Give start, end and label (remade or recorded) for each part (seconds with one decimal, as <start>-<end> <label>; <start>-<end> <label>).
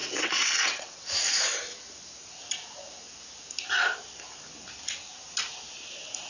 0.0-1.1 remade; 1.1-6.3 recorded